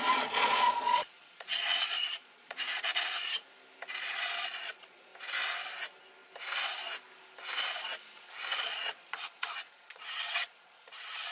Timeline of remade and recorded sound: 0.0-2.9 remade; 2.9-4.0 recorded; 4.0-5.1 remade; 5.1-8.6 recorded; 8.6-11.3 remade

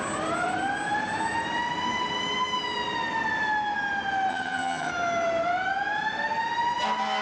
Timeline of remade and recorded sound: 0.0-4.3 recorded; 4.3-4.9 remade; 4.9-7.2 recorded

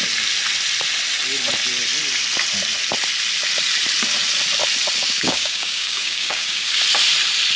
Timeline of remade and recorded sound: 0.0-5.0 recorded; 5.0-6.8 remade; 6.8-7.6 recorded

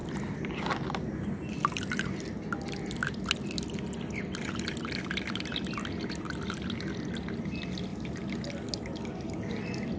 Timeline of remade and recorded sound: 0.0-10.0 recorded

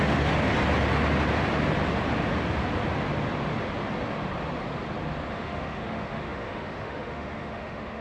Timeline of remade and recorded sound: 0.0-0.5 remade; 0.5-5.3 recorded; 5.3-8.0 remade